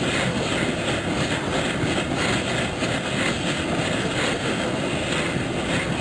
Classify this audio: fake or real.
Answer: real